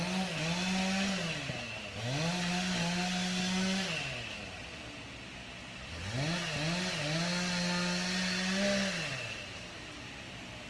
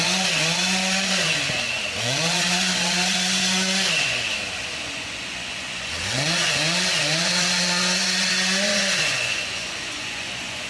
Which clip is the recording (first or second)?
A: first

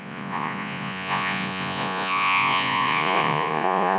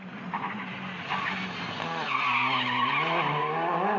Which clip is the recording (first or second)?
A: second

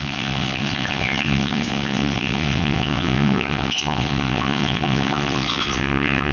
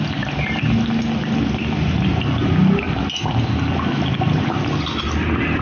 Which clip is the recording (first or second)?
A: second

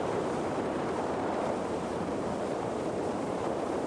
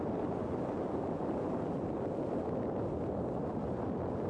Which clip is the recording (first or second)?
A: second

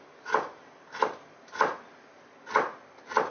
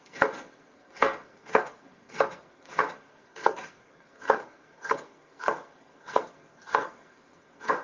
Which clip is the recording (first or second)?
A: first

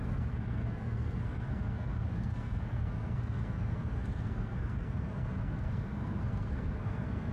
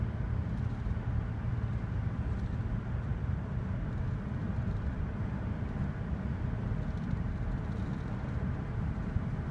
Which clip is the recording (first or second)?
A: second